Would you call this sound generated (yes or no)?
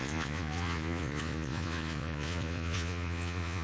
yes